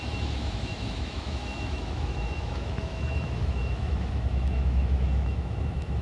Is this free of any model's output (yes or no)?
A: no